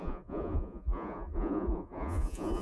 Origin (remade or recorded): remade